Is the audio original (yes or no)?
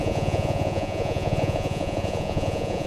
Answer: no